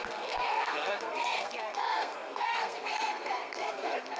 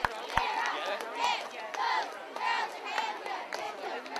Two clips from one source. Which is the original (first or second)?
second